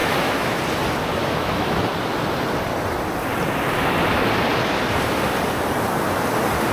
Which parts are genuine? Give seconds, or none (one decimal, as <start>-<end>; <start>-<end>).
0.6-1.2; 1.8-6.7